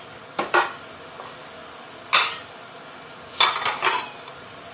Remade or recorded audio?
recorded